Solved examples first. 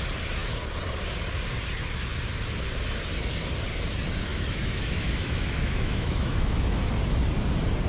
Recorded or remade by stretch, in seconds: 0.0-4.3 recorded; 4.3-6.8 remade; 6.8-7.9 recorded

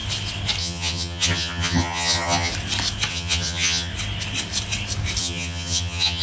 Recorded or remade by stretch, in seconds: 0.0-0.6 recorded; 0.6-2.5 remade; 2.5-3.1 recorded; 3.1-3.9 remade; 3.9-5.2 recorded; 5.2-6.2 remade

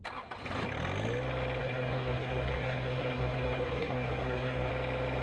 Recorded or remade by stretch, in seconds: 0.0-1.6 recorded; 1.6-4.7 remade; 4.7-5.2 recorded

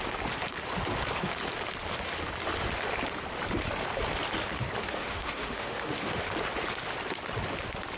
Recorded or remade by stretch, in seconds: 0.0-4.8 recorded; 4.8-6.2 remade; 6.2-8.0 recorded

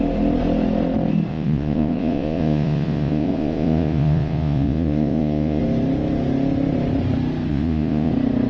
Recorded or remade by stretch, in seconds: 0.0-1.3 recorded; 1.3-5.6 remade; 5.6-7.5 recorded; 7.5-8.1 remade; 8.1-8.5 recorded

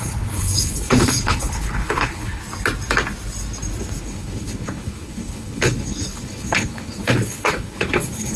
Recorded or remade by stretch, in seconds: 0.0-2.4 remade; 2.4-4.0 recorded; 4.0-8.4 remade

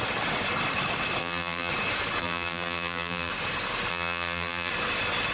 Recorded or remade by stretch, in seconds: 0.0-1.2 recorded; 1.2-1.7 remade; 1.7-2.2 recorded; 2.2-3.3 remade; 3.3-3.9 recorded; 3.9-4.7 remade; 4.7-5.3 recorded

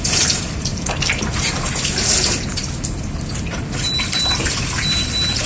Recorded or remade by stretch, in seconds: 0.0-0.7 remade; 0.7-4.0 recorded; 4.0-5.5 remade